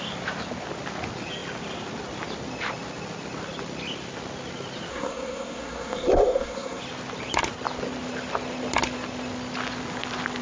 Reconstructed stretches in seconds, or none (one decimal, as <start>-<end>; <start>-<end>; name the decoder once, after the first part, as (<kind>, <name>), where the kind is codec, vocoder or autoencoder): 4.9-6.8 (codec, SNAC)